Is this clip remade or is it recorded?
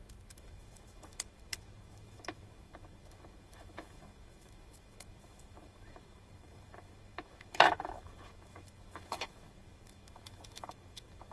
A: remade